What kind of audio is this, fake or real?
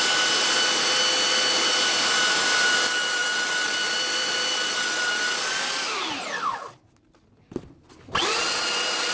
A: real